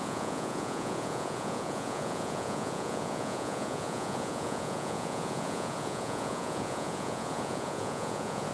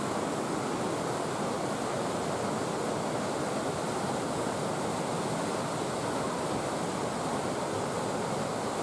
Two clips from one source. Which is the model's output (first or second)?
first